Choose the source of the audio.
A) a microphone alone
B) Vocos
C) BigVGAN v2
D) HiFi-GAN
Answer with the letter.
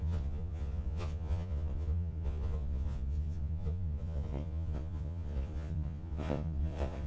B